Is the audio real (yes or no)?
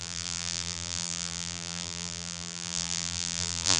no